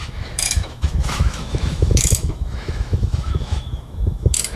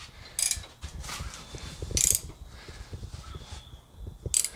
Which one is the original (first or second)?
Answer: second